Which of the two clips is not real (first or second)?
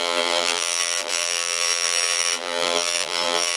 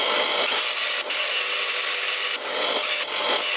first